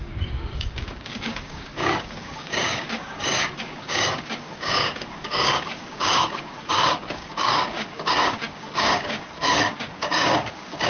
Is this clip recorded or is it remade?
remade